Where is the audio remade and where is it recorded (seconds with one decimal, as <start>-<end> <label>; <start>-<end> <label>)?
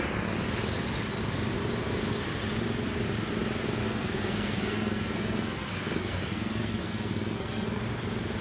0.0-3.8 recorded; 3.8-7.8 remade; 7.8-8.4 recorded